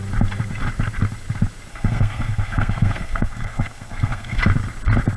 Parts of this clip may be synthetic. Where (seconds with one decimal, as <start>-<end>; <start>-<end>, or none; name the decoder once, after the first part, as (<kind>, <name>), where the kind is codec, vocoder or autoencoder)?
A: 1.7-4.4 (codec, SNAC)